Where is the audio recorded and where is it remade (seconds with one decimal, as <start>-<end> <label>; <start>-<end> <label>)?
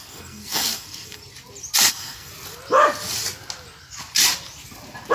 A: 0.0-1.2 remade; 1.2-1.9 recorded; 1.9-2.3 remade; 2.3-5.1 recorded